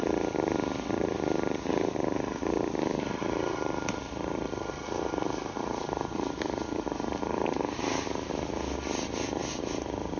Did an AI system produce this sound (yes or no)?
no